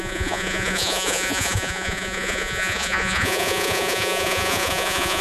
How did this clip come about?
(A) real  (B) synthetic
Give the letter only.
B